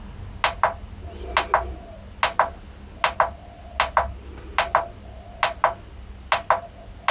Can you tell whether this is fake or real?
real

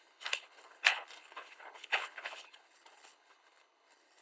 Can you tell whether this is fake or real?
fake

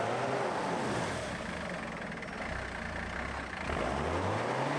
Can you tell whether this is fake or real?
real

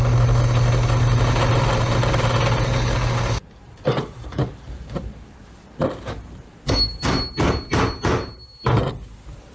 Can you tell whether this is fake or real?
real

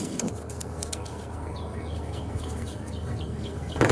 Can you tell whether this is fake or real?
fake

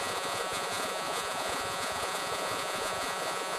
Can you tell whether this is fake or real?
fake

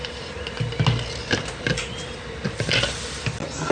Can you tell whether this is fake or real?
real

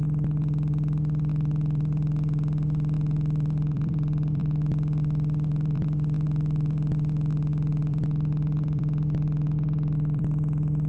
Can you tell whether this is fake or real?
fake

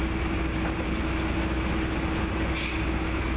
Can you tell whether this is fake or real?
real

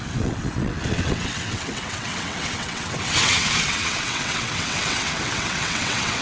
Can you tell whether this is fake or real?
fake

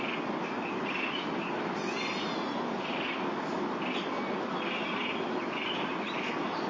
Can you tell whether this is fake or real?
real